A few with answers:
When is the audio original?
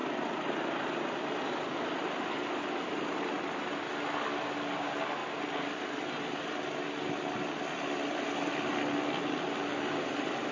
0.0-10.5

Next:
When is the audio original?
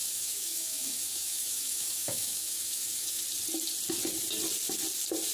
3.2-5.3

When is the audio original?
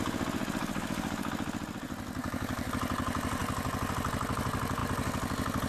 0.0-0.6; 1.3-2.2; 2.7-5.7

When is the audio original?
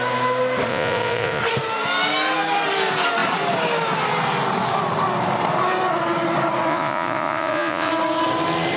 0.0-0.7; 1.4-6.7; 7.9-8.8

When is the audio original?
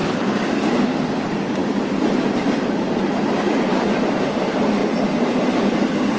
0.0-0.7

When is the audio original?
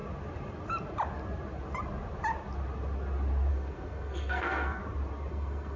0.0-3.5; 4.8-5.3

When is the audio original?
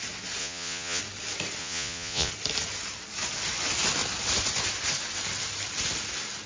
0.0-0.4; 1.0-1.6; 2.3-6.5